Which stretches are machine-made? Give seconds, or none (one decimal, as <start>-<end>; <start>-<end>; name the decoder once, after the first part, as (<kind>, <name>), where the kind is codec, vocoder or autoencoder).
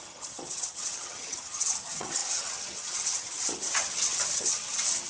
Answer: 0.0-5.1 (vocoder, HiFi-GAN)